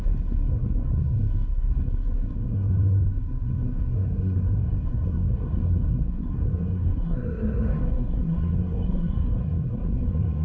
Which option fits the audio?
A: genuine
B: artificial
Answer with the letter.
B